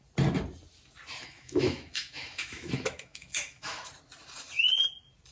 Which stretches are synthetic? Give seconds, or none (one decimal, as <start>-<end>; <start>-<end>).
1.2-3.9